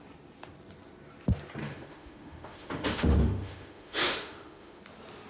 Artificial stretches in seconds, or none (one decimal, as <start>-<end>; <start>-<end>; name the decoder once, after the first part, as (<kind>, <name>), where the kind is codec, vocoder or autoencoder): 1.6-4.8 (autoencoder, DAC-VAE)